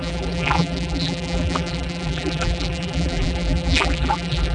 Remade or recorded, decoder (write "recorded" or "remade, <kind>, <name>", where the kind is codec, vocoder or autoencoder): remade, vocoder, BigVGAN v2